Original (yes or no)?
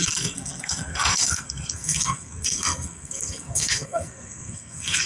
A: no